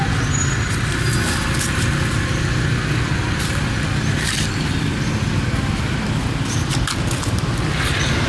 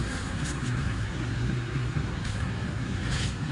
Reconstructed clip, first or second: second